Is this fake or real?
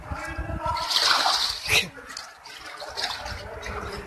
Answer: real